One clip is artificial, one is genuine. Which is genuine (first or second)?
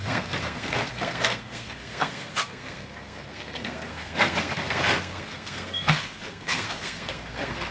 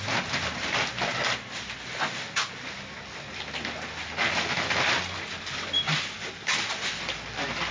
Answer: second